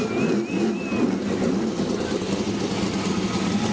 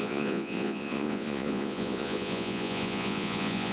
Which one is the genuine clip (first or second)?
first